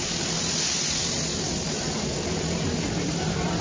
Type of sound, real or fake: real